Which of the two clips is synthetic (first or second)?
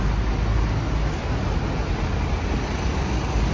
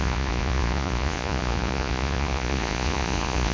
second